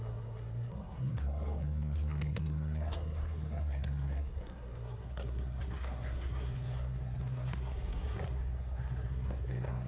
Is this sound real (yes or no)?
no